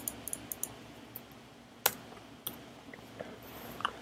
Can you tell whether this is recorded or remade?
recorded